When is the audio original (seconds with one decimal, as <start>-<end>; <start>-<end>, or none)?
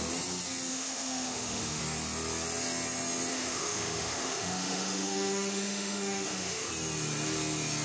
0.0-0.7; 1.8-3.3; 6.7-7.8